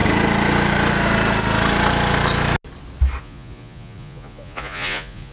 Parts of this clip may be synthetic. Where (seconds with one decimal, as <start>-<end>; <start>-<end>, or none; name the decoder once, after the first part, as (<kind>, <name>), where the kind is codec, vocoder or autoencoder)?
3.2-5.3 (vocoder, Vocos)